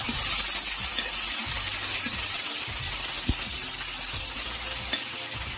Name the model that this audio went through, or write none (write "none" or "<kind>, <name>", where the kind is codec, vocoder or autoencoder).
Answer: none